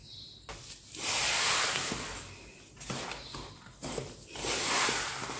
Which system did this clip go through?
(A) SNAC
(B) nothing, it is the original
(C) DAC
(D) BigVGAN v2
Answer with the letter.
B